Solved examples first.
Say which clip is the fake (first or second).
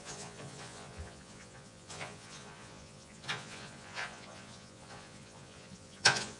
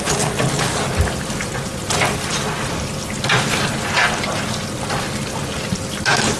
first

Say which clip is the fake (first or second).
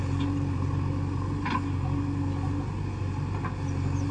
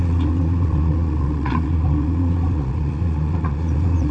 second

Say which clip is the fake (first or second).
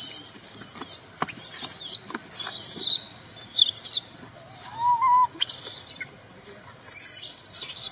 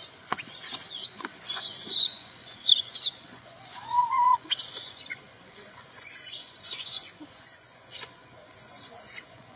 second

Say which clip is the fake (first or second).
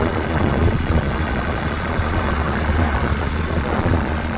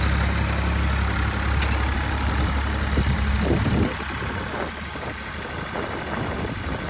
first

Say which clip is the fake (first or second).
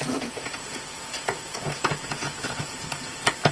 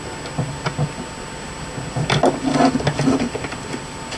first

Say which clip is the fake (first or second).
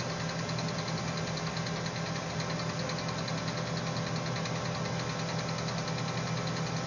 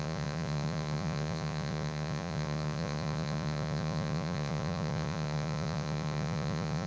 second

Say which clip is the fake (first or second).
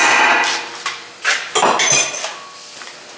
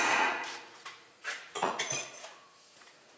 second